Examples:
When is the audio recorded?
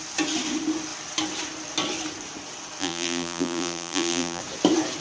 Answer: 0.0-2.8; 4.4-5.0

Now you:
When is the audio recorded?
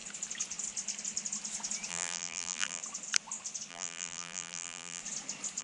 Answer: 0.0-1.9; 2.8-3.7; 5.0-5.6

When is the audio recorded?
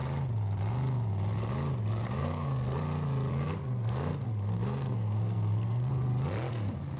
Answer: 0.0-2.2; 2.8-3.3; 5.9-7.0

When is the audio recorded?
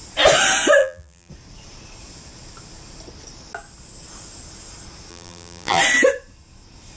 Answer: 0.0-0.8; 1.3-5.1; 5.8-7.0